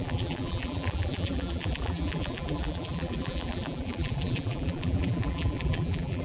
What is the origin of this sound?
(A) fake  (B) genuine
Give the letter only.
A